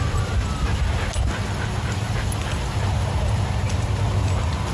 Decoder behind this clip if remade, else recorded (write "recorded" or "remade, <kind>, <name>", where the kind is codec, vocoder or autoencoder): recorded